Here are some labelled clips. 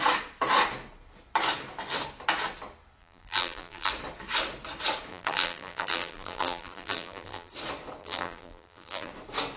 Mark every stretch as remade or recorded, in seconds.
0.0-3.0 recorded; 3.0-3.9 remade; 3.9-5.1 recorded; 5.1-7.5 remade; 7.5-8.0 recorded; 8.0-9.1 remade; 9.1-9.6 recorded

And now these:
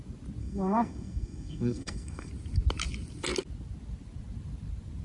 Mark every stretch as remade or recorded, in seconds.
0.0-0.4 recorded; 0.4-2.3 remade; 2.3-5.0 recorded

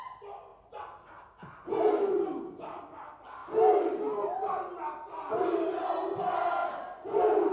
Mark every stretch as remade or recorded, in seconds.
0.0-7.5 recorded

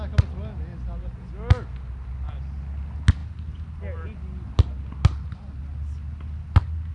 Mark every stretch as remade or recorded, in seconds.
0.0-6.9 recorded